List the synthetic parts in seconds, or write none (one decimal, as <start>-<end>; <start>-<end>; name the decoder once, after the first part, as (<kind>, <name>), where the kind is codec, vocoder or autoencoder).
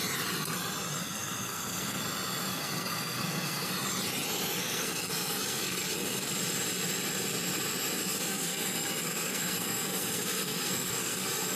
1.0-2.0 (codec, SNAC); 2.5-3.7; 4.6-6.3; 8.0-11.6